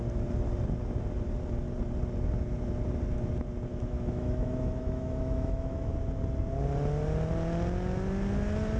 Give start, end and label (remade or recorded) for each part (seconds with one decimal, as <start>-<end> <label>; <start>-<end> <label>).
0.0-3.7 recorded; 3.7-5.9 remade; 5.9-8.8 recorded